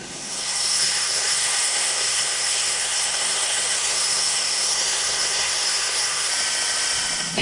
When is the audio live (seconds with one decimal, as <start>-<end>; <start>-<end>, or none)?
6.3-7.4